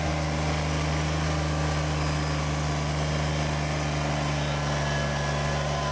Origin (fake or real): real